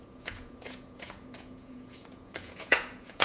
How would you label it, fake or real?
fake